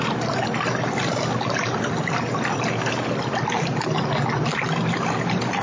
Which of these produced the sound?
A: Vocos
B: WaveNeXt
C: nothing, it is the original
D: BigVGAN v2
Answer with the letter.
C